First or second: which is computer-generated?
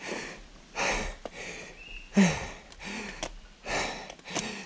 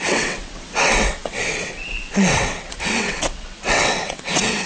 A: second